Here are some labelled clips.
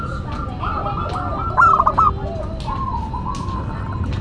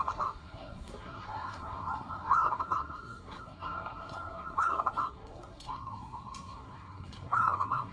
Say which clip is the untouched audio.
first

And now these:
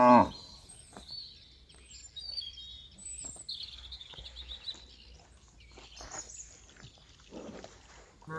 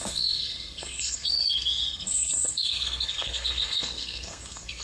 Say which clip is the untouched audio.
first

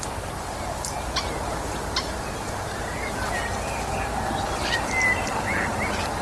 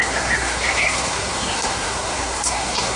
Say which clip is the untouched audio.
first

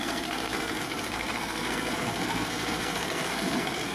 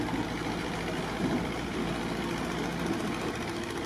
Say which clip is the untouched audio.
second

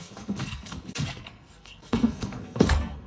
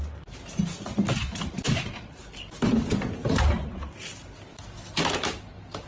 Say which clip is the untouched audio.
second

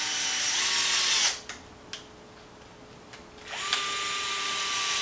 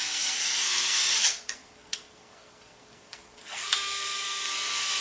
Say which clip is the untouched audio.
first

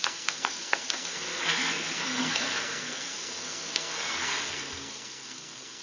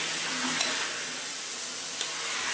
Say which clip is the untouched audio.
second